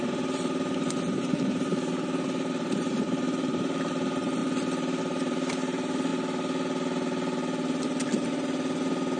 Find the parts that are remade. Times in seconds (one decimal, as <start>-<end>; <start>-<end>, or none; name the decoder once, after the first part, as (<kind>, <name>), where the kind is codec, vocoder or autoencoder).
0.0-1.7 (vocoder, BigVGAN v2); 2.5-4.4; 5.0-6.1